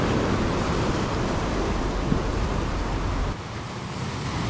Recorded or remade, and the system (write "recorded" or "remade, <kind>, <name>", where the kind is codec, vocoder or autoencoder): recorded